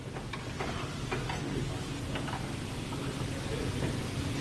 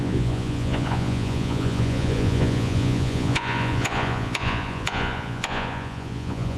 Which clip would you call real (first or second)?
first